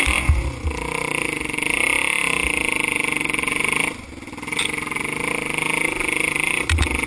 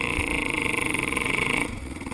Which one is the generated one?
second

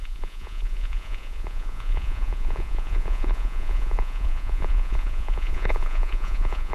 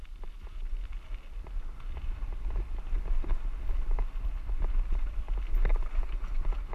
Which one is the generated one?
first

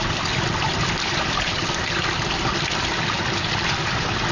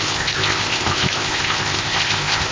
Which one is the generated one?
second